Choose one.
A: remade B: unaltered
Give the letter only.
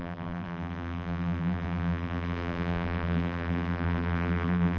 A